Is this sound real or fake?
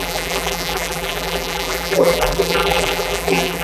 fake